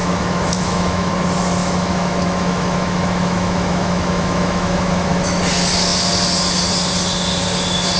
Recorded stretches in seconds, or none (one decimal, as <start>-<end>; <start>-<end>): 1.1-1.6; 5.4-8.0